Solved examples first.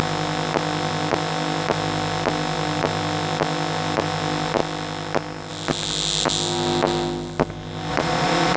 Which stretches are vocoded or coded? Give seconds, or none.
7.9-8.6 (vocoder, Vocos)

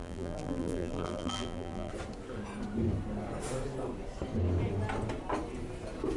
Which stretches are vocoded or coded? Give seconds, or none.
0.0-1.9 (vocoder, BigVGAN v2)

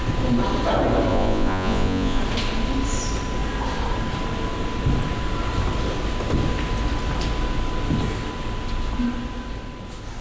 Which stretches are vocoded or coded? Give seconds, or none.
1.1-2.2 (vocoder, Vocos)

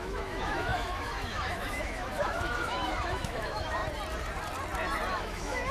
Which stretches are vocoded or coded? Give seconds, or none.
0.0-3.8 (autoencoder, DAC-VAE); 5.1-5.7

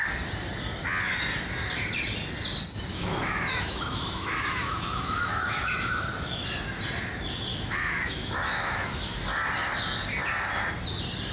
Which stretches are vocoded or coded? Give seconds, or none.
2.9-6.1 (autoencoder, DAC-VAE); 7.5-9.0

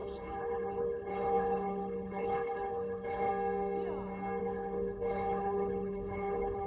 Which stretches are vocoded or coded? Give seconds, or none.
0.0-3.3 (codec, HILCodec); 4.4-6.7